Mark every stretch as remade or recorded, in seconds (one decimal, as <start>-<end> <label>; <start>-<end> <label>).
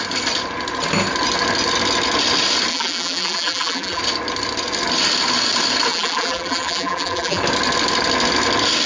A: 0.0-2.7 recorded; 2.7-4.0 remade; 4.0-5.9 recorded; 5.9-7.4 remade; 7.4-8.9 recorded